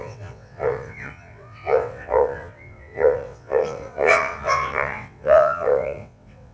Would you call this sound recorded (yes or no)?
no